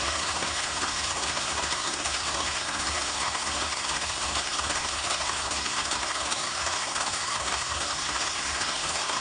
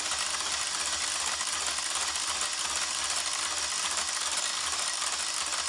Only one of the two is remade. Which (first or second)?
first